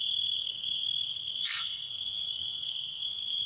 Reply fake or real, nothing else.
fake